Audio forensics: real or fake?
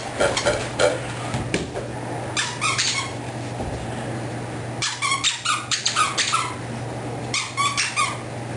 fake